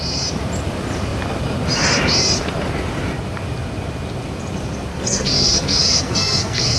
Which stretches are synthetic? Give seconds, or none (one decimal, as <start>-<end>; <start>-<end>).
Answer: 4.9-6.8